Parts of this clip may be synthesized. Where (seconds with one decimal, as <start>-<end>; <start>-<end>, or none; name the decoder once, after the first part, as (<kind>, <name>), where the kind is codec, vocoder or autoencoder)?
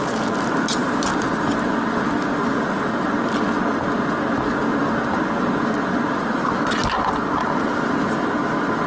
none